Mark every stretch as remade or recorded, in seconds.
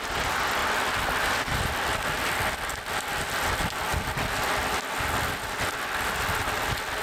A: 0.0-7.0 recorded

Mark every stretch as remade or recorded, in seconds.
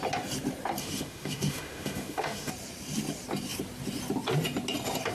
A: 0.0-0.8 recorded; 0.8-2.5 remade; 2.5-5.1 recorded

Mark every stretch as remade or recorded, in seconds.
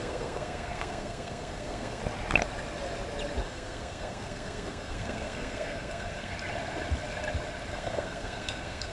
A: 0.0-2.0 remade; 2.0-3.4 recorded; 3.4-6.3 remade; 6.3-7.7 recorded; 7.7-8.9 remade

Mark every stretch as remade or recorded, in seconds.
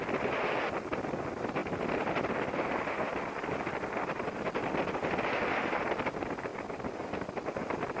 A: 0.0-1.6 recorded; 1.6-2.7 remade; 2.7-8.0 recorded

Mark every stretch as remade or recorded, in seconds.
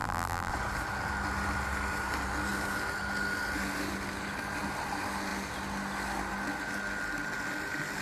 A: 0.0-0.5 remade; 0.5-8.0 recorded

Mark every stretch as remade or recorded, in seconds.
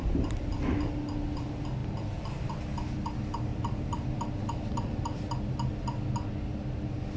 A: 0.0-3.5 recorded; 3.5-5.2 remade; 5.2-7.2 recorded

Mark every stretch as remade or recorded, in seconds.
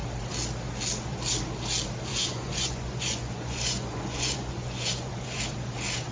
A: 0.0-2.1 recorded; 2.1-5.4 remade; 5.4-6.1 recorded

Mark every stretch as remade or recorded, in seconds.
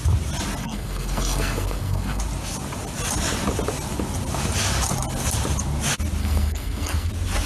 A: 0.0-0.6 recorded; 0.6-2.2 remade; 2.2-6.2 recorded; 6.2-7.1 remade; 7.1-7.5 recorded